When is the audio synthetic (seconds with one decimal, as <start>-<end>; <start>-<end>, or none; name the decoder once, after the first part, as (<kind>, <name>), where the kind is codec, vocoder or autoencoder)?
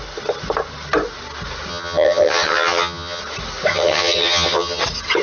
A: 1.7-3.2 (vocoder, HiFi-GAN); 3.7-4.8